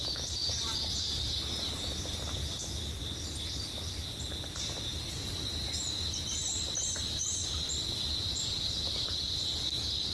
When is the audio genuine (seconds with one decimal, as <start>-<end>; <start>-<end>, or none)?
0.0-0.4; 1.4-7.4

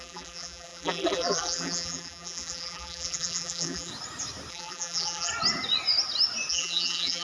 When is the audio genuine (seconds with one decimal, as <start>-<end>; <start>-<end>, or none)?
3.9-4.5; 5.3-6.5